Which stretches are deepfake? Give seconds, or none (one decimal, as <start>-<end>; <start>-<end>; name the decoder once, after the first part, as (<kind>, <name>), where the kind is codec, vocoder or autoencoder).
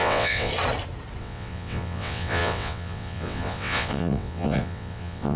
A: 0.0-0.5 (vocoder, WaveNeXt); 1.2-5.4